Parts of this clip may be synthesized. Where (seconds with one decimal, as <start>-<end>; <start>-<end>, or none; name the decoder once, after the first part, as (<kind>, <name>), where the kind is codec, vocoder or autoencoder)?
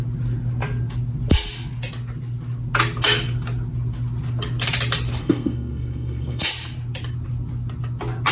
5.2-6.5 (codec, SNAC)